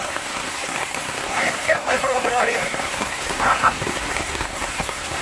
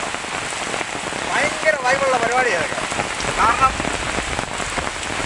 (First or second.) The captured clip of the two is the second